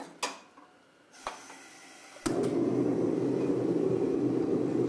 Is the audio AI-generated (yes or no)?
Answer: no